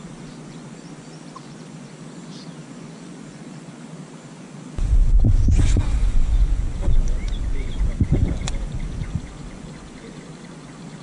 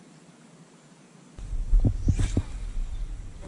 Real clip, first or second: second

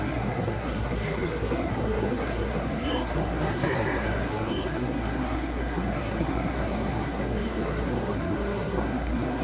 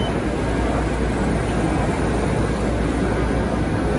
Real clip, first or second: second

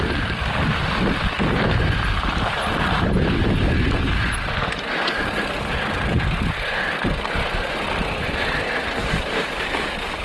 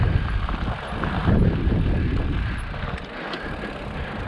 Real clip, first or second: second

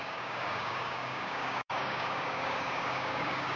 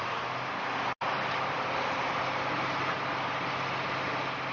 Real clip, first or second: second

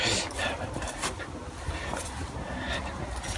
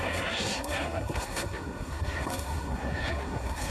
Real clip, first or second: first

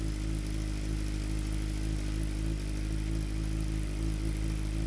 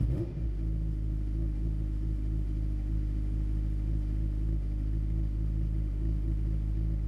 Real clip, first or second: first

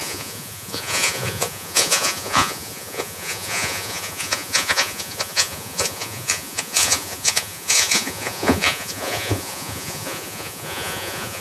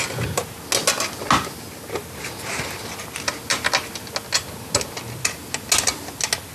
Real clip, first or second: second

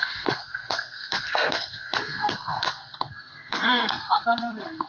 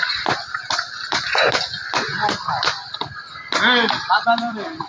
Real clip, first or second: second